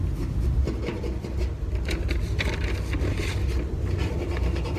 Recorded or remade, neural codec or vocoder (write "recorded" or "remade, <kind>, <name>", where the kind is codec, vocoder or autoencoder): recorded